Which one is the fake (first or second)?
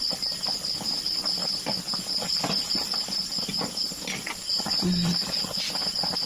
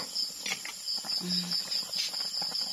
first